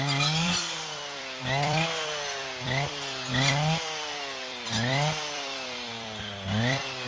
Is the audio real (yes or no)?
no